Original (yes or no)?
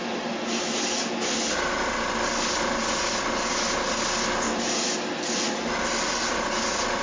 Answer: yes